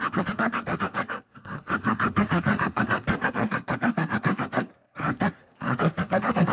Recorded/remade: remade